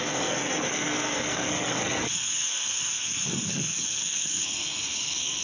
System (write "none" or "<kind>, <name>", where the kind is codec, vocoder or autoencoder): codec, SNAC